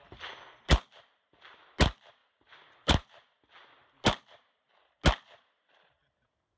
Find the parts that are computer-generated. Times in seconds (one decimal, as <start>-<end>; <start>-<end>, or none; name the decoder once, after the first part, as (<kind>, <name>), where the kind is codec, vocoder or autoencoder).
2.2-3.4 (vocoder, BigVGAN v2)